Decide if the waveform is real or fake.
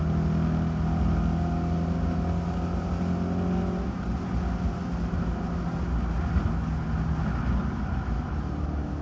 real